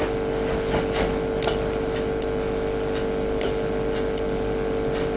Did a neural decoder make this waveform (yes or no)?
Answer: no